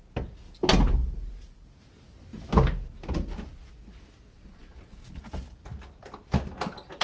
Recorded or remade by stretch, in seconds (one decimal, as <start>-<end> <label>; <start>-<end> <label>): 0.0-4.3 recorded; 4.3-5.2 remade; 5.2-7.0 recorded